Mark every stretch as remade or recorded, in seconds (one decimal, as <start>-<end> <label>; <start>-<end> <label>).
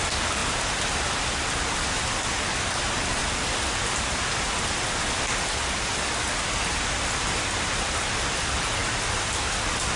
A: 0.0-3.2 remade; 3.2-8.3 recorded; 8.3-8.8 remade; 8.8-9.3 recorded; 9.3-10.0 remade